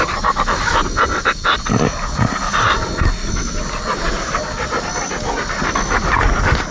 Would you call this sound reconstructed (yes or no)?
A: no